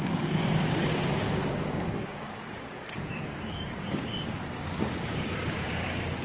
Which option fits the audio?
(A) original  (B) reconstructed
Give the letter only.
B